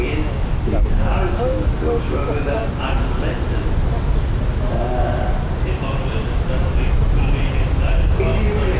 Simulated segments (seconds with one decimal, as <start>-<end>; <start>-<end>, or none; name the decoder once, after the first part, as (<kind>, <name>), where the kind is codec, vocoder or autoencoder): none